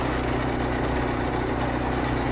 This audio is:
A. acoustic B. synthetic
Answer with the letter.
A